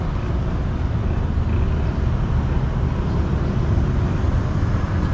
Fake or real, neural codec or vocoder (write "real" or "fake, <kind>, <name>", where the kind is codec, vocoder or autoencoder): real